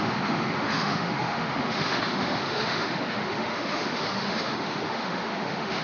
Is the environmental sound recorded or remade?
remade